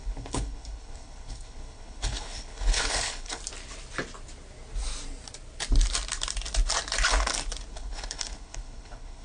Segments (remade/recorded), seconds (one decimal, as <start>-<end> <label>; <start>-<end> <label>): 0.0-3.4 remade; 3.4-7.7 recorded; 7.7-9.2 remade